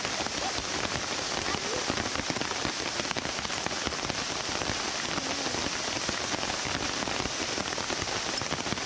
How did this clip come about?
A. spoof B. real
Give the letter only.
B